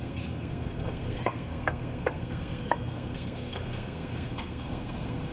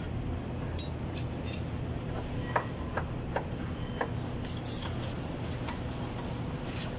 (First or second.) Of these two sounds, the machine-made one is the first